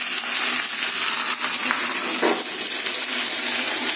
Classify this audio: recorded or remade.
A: recorded